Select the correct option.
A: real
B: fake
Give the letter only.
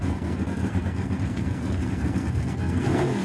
B